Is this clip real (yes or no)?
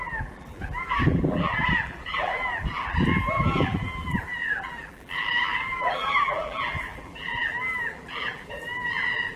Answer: no